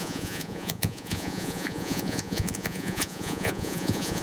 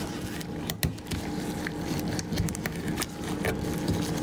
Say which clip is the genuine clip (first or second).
second